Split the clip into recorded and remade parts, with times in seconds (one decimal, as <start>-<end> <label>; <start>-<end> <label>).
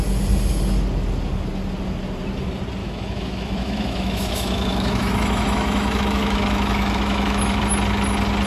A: 0.0-2.8 recorded; 2.8-7.6 remade; 7.6-8.5 recorded